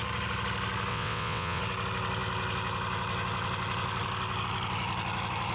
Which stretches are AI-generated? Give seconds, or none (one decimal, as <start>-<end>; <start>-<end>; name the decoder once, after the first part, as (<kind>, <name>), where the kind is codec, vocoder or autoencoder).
0.9-1.6 (vocoder, WaveNeXt)